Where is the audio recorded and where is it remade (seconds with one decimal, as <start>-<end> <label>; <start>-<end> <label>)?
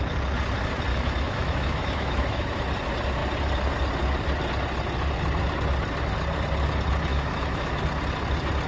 0.0-0.9 recorded; 0.9-2.5 remade; 2.5-7.1 recorded; 7.1-7.8 remade; 7.8-8.7 recorded